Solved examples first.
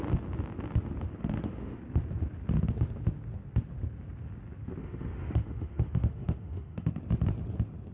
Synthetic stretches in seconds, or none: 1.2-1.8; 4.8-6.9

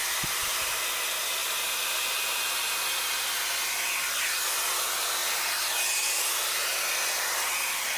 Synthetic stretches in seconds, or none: none